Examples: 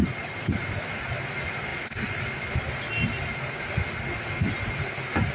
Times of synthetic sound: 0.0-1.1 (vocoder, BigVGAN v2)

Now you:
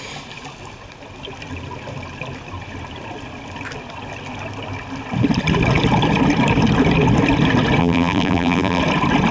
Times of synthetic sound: 7.8-8.8 (vocoder, BigVGAN v2)

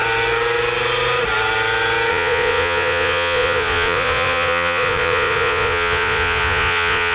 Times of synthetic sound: 2.1-7.1 (vocoder, Vocos)

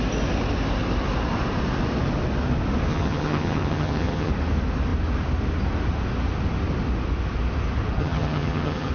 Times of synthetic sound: 2.9-4.3 (vocoder, HiFi-GAN); 8.0-8.9